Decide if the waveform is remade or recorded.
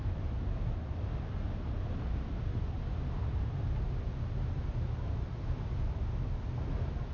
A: recorded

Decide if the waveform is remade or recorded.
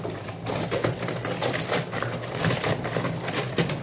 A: recorded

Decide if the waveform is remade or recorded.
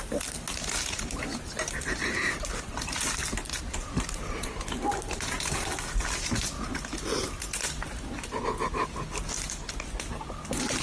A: recorded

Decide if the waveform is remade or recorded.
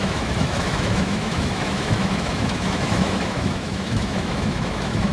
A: remade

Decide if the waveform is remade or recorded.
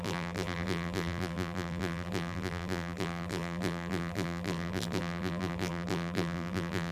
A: remade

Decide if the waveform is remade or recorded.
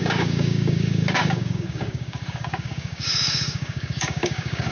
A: remade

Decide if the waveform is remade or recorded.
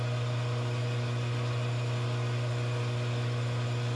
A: recorded